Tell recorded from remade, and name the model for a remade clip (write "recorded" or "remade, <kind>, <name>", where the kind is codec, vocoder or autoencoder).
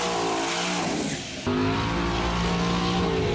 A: recorded